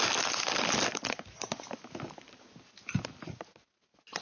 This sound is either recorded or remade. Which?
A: recorded